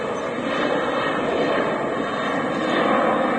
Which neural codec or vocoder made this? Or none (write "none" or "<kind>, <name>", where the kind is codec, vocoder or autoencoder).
none